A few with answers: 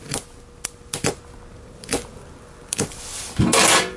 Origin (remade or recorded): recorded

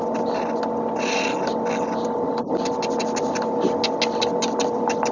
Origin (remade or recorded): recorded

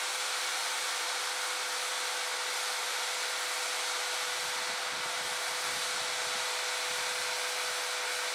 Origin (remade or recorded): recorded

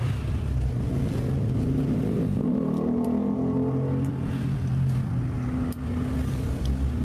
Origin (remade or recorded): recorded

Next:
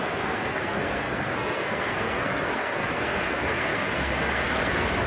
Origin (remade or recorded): remade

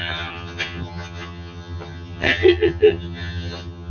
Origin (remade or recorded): remade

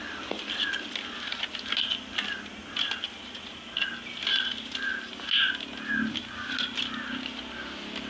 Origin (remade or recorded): recorded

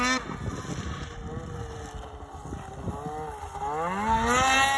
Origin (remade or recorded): recorded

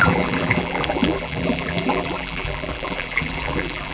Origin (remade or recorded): remade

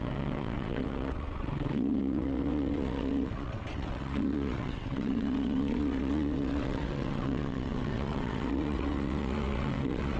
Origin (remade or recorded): remade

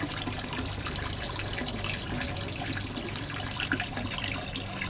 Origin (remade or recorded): recorded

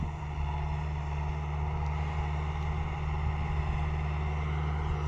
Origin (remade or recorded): recorded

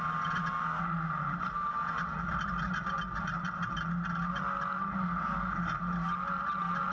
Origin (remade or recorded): recorded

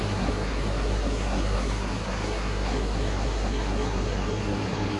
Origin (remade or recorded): remade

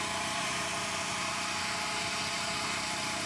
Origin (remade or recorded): recorded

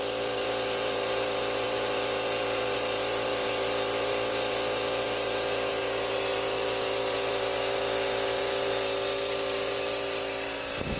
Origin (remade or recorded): remade